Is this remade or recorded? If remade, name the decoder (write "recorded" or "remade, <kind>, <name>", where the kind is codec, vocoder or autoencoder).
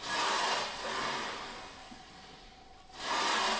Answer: recorded